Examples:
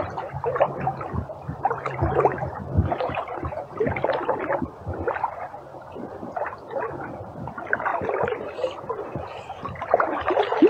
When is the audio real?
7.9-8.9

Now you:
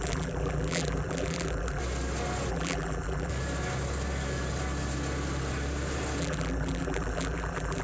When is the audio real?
1.8-2.5; 3.3-6.2

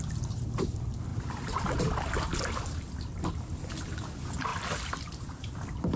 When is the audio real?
0.0-6.0

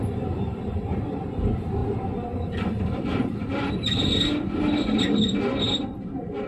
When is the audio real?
0.0-6.5

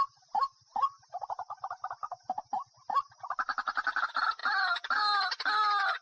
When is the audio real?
0.0-6.0

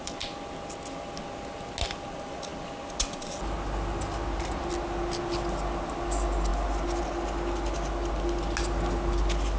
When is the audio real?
0.0-9.6

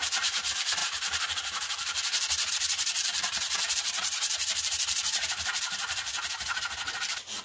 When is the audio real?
6.1-7.0

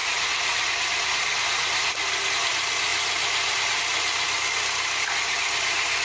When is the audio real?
0.0-2.9; 3.8-6.0